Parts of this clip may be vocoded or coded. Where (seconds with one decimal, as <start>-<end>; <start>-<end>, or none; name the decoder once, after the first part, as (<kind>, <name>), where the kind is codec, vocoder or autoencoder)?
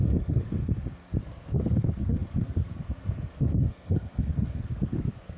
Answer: 0.0-0.6 (codec, SNAC); 1.2-5.4